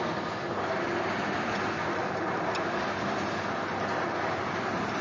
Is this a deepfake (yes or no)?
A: no